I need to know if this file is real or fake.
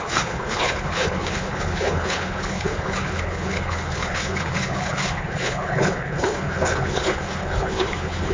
fake